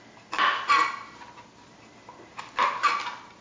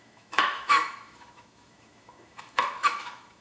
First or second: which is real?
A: first